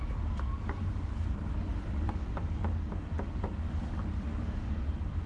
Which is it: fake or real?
fake